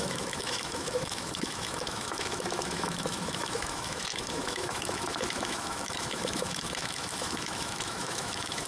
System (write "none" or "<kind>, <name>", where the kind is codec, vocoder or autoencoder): autoencoder, DAC-VAE